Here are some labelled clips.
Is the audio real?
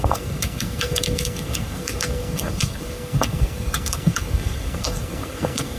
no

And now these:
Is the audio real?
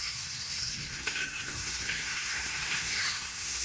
no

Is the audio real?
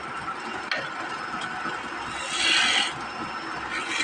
yes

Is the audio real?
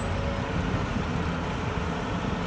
yes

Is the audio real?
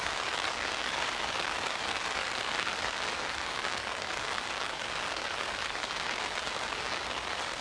no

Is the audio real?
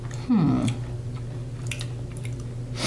yes